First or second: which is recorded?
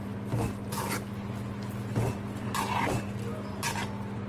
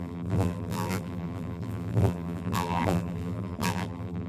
first